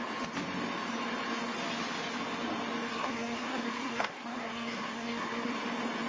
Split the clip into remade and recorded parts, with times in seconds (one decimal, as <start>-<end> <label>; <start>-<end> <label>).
0.0-2.9 recorded; 2.9-5.5 remade; 5.5-6.1 recorded